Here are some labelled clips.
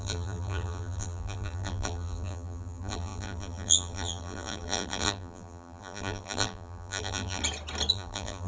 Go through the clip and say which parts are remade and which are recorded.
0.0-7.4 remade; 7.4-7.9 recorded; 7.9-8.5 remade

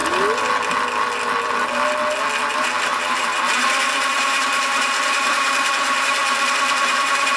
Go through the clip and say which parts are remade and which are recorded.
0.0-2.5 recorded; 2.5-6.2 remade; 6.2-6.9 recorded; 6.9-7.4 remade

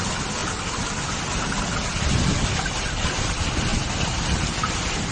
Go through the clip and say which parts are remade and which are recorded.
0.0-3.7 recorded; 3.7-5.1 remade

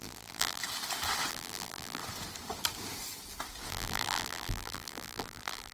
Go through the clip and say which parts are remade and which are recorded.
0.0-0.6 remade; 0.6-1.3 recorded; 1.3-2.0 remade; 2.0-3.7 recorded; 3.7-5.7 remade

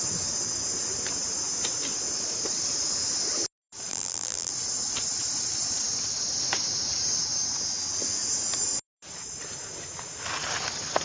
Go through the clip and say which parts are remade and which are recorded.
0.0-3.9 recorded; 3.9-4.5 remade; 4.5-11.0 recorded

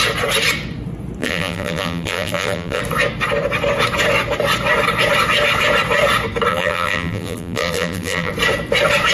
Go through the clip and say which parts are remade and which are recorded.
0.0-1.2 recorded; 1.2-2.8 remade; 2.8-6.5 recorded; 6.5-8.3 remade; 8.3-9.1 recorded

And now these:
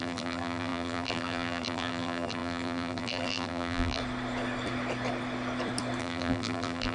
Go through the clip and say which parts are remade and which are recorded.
0.0-4.0 remade; 4.0-6.0 recorded; 6.0-6.9 remade

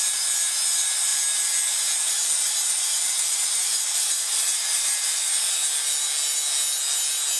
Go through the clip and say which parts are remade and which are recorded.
0.0-5.6 remade; 5.6-7.4 recorded